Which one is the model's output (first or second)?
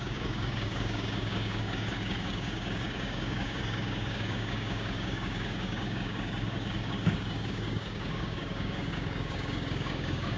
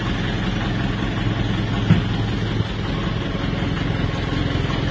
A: first